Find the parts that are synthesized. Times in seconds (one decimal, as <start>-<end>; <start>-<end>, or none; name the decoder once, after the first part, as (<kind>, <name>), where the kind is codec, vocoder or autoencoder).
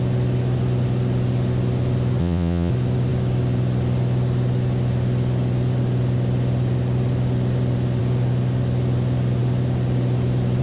2.2-2.7 (vocoder, Vocos)